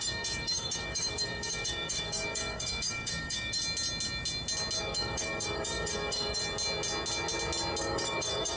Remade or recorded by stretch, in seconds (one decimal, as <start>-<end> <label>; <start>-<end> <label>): 0.0-3.6 remade; 3.6-4.8 recorded; 4.8-6.4 remade; 6.4-7.8 recorded; 7.8-8.6 remade